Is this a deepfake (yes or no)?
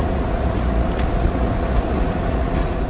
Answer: yes